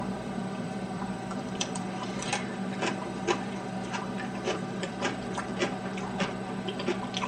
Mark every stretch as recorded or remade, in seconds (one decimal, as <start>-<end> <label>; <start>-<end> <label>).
0.0-2.3 remade; 2.3-2.9 recorded; 2.9-5.5 remade; 5.5-7.3 recorded